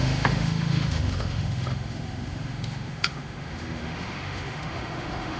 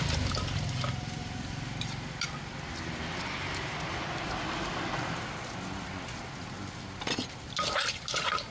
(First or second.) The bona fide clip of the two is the second